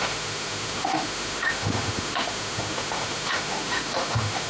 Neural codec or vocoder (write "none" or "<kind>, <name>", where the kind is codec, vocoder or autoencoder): autoencoder, DAC-VAE